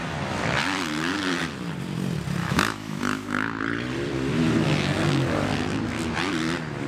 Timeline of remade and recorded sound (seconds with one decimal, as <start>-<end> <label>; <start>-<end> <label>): 0.0-2.4 recorded; 2.4-3.6 remade; 3.6-6.9 recorded